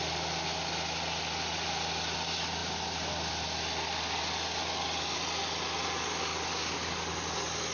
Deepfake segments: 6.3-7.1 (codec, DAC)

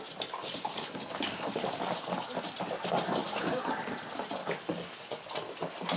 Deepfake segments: 0.4-2.4 (codec, DAC); 3.2-3.7; 4.4-5.3

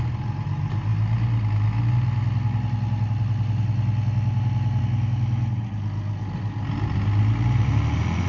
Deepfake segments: none

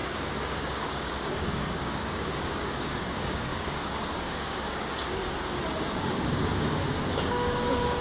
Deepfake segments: 0.0-5.2 (codec, DAC); 5.9-8.0

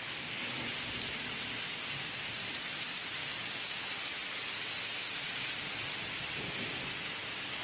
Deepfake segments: 3.2-4.0 (codec, DAC)

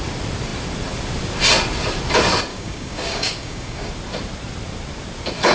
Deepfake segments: 2.5-3.9 (codec, DAC)

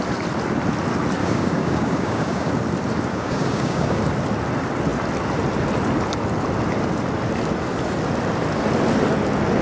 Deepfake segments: 1.2-2.5 (codec, DAC); 3.1-4.0

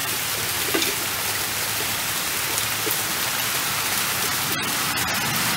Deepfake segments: none